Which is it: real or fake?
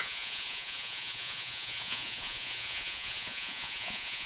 fake